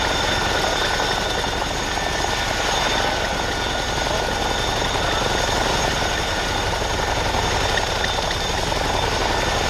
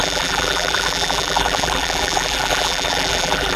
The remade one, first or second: second